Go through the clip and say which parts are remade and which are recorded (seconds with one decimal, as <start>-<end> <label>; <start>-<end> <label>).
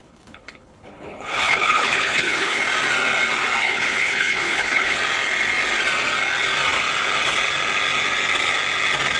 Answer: 0.0-2.6 remade; 2.6-3.6 recorded; 3.6-5.0 remade; 5.0-9.2 recorded